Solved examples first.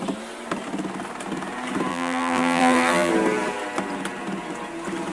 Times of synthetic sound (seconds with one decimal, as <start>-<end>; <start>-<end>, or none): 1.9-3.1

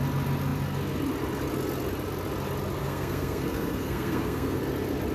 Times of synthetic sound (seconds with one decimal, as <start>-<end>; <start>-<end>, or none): 2.8-4.6

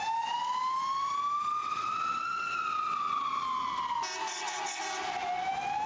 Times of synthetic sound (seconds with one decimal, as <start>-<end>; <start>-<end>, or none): 1.6-3.4; 4.3-4.8